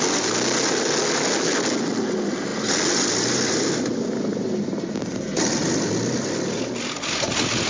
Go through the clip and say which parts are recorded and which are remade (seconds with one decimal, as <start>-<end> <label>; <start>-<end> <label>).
0.0-7.7 recorded